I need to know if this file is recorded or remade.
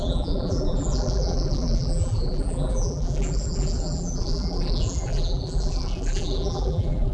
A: remade